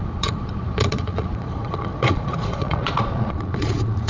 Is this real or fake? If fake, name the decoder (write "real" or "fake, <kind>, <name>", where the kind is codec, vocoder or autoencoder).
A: fake, vocoder, Vocos